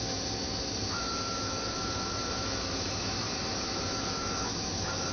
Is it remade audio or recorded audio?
remade